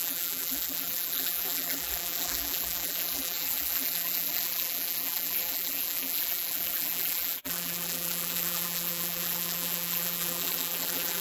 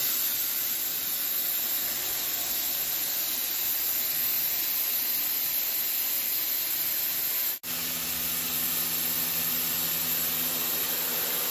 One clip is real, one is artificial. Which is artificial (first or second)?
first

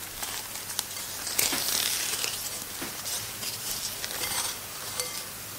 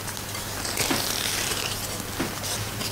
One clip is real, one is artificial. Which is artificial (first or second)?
first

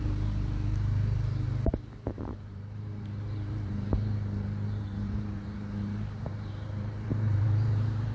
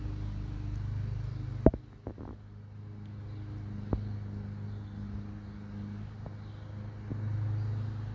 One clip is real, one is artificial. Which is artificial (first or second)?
first